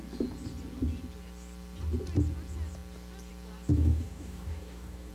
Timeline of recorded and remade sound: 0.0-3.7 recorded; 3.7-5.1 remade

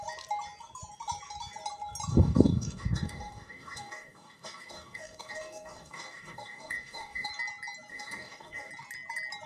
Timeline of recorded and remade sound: 0.0-2.1 recorded; 2.1-7.3 remade; 7.3-7.9 recorded; 7.9-8.7 remade; 8.7-9.5 recorded

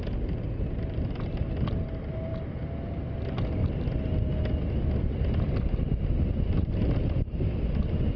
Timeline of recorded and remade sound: 0.0-8.2 recorded

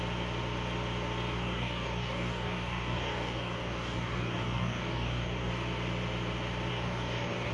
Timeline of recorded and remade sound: 0.0-1.3 recorded; 1.3-5.5 remade; 5.5-6.7 recorded; 6.7-7.5 remade

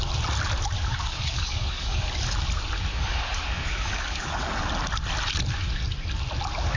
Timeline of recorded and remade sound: 0.0-0.9 recorded; 0.9-2.1 remade; 2.1-2.9 recorded; 2.9-4.6 remade; 4.6-6.8 recorded

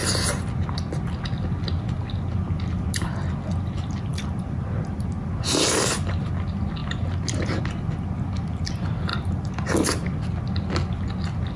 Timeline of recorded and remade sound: 0.0-11.6 recorded

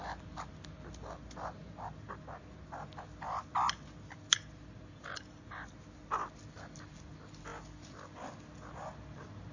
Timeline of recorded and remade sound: 0.0-9.5 recorded